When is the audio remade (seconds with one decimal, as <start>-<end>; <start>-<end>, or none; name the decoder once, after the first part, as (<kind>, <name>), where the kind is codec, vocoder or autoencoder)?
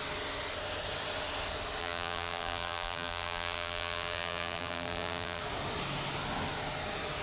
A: 1.8-5.4 (vocoder, BigVGAN v2)